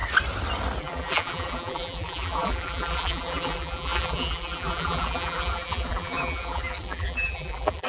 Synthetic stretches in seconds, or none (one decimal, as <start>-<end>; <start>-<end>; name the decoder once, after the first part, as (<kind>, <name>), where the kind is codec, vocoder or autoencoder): 0.8-7.9 (vocoder, BigVGAN v2)